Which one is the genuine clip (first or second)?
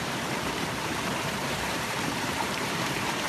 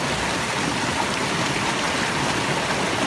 second